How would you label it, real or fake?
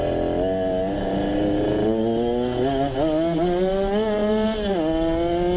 real